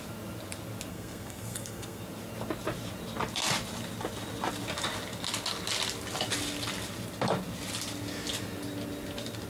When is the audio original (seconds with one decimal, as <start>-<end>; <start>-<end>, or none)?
0.0-0.9; 2.0-9.5